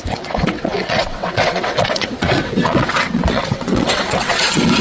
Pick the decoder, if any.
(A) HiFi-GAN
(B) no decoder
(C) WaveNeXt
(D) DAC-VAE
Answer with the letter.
C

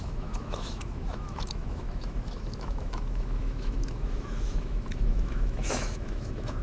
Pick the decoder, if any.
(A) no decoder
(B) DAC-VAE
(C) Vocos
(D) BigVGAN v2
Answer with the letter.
B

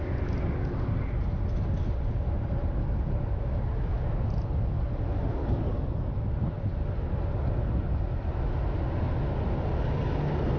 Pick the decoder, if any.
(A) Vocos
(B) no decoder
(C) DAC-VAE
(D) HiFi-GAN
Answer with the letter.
B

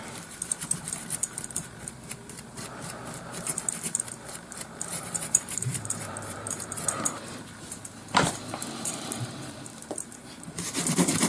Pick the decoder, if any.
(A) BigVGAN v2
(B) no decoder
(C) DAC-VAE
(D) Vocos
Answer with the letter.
A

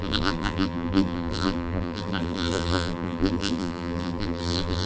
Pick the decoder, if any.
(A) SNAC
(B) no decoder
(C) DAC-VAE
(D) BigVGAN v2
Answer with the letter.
D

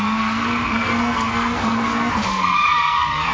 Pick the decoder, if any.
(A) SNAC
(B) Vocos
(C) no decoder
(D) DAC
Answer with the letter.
A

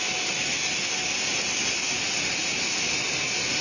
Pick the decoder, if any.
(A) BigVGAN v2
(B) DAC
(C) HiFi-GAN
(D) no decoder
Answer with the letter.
D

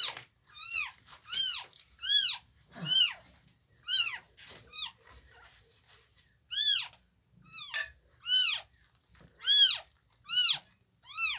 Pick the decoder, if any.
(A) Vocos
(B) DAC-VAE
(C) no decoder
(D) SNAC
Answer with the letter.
C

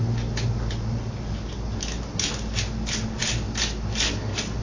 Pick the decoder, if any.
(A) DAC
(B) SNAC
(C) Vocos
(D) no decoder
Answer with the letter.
D